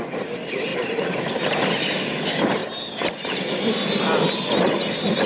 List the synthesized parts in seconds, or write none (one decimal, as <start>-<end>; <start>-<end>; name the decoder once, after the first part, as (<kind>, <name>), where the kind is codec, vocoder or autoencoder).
0.7-2.1 (vocoder, BigVGAN v2); 2.6-3.6